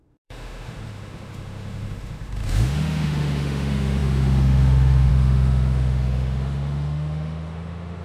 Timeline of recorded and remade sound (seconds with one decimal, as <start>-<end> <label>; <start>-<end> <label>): 0.0-8.0 remade